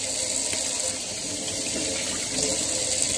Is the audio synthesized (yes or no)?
no